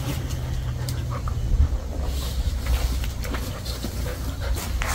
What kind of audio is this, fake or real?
real